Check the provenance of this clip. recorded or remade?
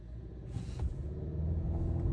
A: remade